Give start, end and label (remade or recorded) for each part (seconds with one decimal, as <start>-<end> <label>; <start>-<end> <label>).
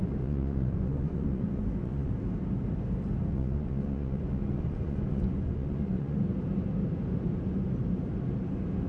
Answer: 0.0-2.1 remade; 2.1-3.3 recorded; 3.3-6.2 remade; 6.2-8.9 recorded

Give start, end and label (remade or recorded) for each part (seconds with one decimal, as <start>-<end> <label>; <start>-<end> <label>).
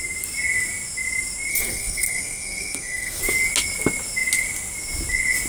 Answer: 0.0-1.5 recorded; 1.5-3.2 remade; 3.2-5.5 recorded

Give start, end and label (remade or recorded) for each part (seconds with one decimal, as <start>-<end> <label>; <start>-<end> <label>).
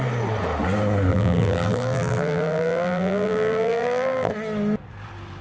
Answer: 0.0-1.1 recorded; 1.1-4.3 remade; 4.3-5.4 recorded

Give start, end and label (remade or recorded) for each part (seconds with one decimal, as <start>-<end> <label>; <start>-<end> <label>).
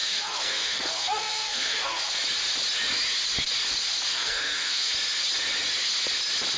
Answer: 0.0-2.0 remade; 2.0-4.1 recorded; 4.1-4.9 remade; 4.9-6.6 recorded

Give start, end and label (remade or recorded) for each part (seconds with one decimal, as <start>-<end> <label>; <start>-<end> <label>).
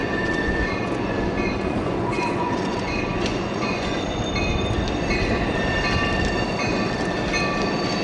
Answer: 0.0-4.2 remade; 4.2-8.0 recorded